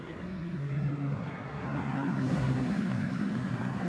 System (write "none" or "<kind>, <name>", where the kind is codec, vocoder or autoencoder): codec, SNAC